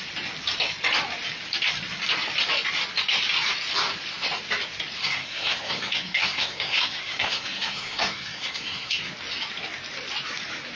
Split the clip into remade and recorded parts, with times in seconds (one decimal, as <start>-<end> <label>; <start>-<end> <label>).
0.0-5.0 recorded; 5.0-9.1 remade; 9.1-10.8 recorded